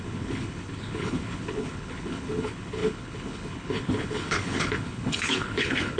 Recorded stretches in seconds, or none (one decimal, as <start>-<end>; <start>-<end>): none